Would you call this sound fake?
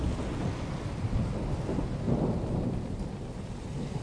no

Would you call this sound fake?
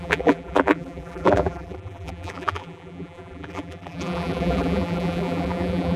yes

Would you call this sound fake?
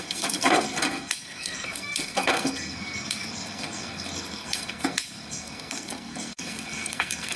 yes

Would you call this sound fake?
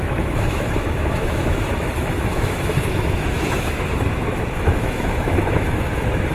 yes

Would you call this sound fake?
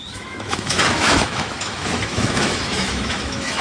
yes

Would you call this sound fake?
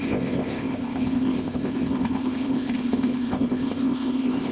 yes